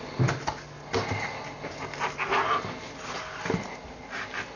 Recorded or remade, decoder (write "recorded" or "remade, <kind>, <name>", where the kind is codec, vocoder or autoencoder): recorded